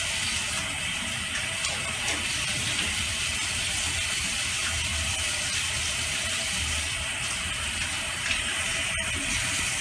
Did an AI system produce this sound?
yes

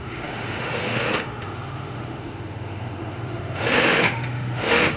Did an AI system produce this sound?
yes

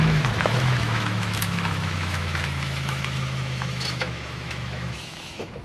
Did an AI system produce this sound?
yes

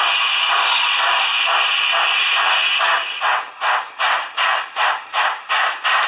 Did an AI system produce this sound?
no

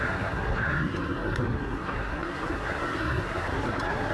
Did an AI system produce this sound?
yes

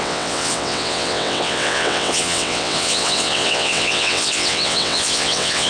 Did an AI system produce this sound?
yes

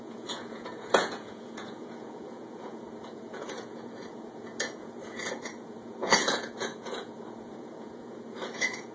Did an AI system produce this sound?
yes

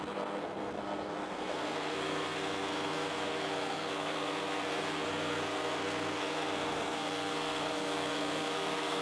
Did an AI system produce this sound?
yes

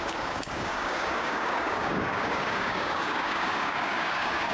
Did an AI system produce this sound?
yes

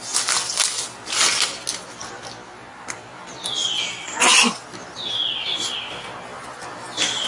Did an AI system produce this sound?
no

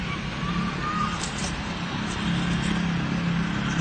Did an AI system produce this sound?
no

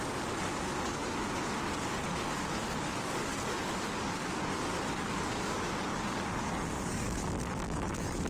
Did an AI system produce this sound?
yes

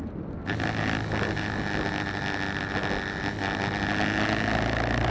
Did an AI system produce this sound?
no